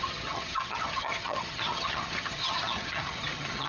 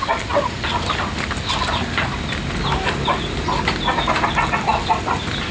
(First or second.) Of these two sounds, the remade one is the first